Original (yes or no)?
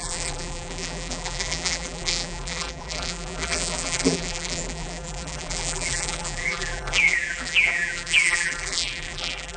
no